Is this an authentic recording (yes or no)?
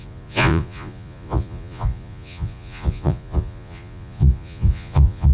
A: no